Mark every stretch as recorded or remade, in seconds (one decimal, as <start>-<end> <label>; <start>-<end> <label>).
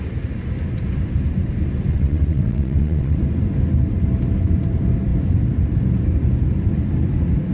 0.0-1.9 recorded; 1.9-3.2 remade; 3.2-7.5 recorded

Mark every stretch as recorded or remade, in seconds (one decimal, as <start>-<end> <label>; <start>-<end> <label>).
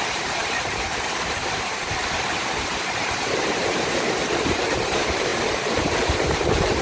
0.0-6.8 remade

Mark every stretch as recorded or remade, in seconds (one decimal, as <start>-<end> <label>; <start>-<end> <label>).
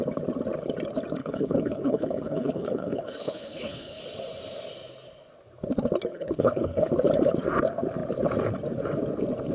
0.0-1.2 recorded; 1.2-4.0 remade; 4.0-6.1 recorded; 6.1-6.9 remade; 6.9-9.5 recorded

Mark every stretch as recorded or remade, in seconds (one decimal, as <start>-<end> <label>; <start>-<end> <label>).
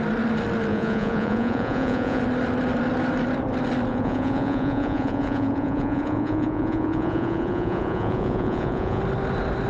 0.0-0.7 recorded; 0.7-2.2 remade; 2.2-3.9 recorded; 3.9-9.0 remade; 9.0-9.7 recorded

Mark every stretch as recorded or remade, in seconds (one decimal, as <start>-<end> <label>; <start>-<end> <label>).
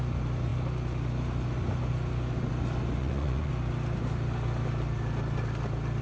0.0-3.0 recorded; 3.0-3.5 remade; 3.5-6.0 recorded